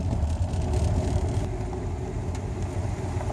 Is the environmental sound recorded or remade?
recorded